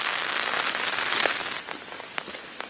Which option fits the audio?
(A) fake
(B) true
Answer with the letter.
B